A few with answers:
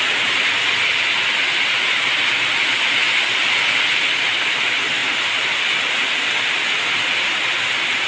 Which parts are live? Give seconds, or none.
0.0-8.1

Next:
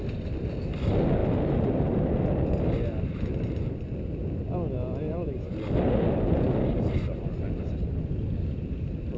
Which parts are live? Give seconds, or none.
0.0-9.2

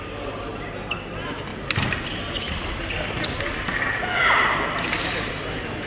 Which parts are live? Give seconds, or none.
0.0-3.9; 5.3-5.9

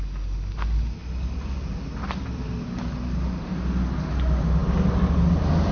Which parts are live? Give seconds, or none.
0.0-5.7

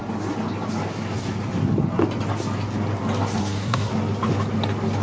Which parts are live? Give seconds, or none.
0.0-3.4; 3.9-5.0

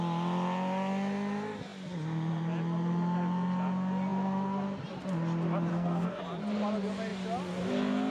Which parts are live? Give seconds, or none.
0.0-5.7; 6.2-8.1